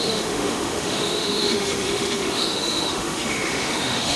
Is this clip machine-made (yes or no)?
yes